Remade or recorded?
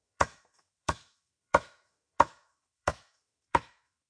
remade